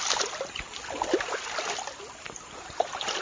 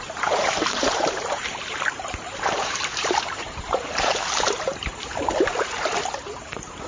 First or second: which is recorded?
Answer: first